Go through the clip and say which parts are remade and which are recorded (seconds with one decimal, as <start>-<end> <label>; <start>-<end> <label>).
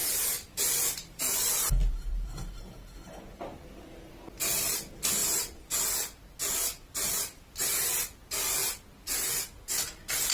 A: 0.0-0.6 remade; 0.6-1.8 recorded; 1.8-2.6 remade; 2.6-5.2 recorded; 5.2-5.8 remade; 5.8-10.3 recorded